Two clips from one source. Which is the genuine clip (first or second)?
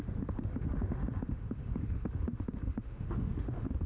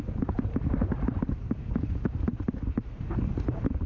second